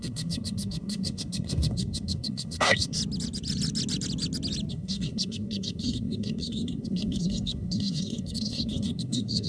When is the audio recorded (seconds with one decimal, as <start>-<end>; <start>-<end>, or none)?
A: 3.0-4.7